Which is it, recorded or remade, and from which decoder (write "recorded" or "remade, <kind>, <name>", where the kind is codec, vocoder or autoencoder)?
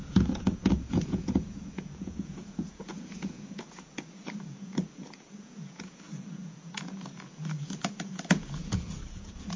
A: remade, vocoder, Vocos